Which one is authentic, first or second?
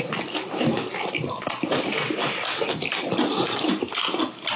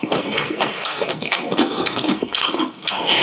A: first